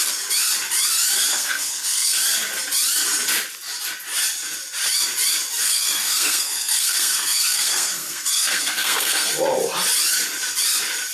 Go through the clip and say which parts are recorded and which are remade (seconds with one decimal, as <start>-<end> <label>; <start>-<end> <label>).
0.0-1.3 recorded; 1.3-2.2 remade; 2.2-5.6 recorded; 5.6-9.3 remade; 9.3-11.1 recorded